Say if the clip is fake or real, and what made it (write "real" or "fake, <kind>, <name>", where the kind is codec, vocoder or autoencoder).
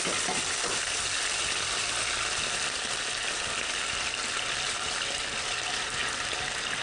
real